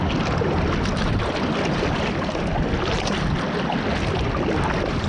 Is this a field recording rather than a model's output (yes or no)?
yes